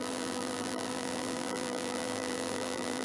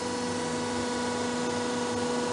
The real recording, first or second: second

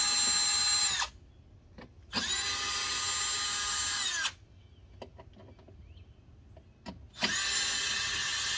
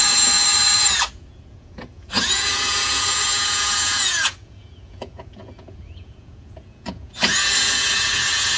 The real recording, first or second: first